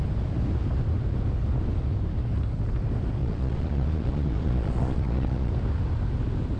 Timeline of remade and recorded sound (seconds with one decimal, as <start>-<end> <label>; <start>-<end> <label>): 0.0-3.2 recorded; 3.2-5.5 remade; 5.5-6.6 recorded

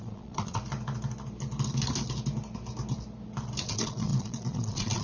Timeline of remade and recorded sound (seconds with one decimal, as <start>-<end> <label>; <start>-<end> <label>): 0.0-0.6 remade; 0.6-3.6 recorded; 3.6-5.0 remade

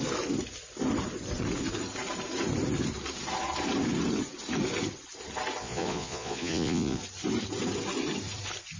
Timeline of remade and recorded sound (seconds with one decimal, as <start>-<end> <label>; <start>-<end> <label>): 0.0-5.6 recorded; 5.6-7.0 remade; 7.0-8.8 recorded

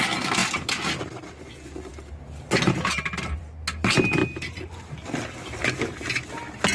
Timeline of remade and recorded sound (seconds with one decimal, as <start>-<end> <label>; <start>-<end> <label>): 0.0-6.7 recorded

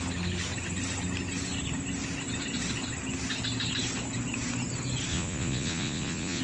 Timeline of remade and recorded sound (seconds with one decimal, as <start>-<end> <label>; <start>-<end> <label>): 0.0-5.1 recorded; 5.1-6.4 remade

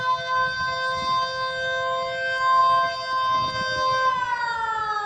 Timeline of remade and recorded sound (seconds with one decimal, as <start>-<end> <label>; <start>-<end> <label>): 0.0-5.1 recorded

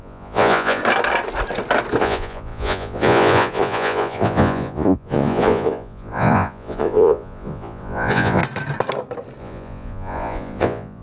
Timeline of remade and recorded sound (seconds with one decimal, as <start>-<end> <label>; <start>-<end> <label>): 0.0-0.8 remade; 0.8-2.0 recorded; 2.0-8.4 remade; 8.4-9.4 recorded; 9.4-11.0 remade

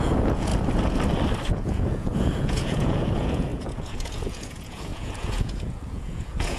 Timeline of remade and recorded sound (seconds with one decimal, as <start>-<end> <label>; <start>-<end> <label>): 0.0-0.5 remade; 0.5-1.5 recorded; 1.5-6.6 remade